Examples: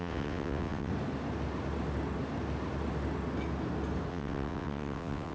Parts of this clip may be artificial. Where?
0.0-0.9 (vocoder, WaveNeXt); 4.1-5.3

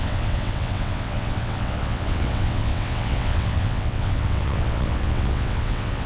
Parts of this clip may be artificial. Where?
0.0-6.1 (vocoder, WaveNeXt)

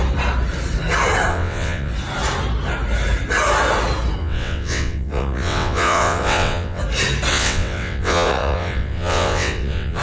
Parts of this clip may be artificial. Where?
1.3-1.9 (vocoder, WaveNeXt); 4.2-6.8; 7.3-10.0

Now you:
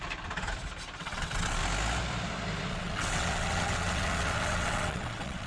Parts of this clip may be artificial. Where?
1.0-1.6 (vocoder, WaveNeXt); 2.7-5.5